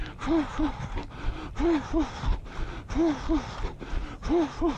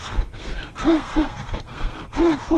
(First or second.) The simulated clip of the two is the second